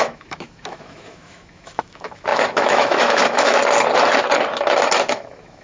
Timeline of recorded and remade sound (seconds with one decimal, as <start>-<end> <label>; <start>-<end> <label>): 0.0-3.6 remade; 3.6-5.1 recorded; 5.1-5.6 remade